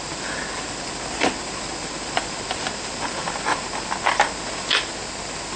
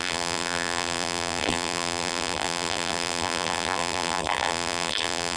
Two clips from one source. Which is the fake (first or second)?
second